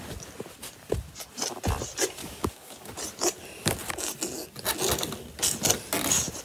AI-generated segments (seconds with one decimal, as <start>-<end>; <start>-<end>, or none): 2.2-2.9